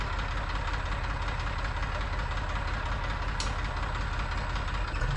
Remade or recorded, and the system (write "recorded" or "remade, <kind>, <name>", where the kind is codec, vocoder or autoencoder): recorded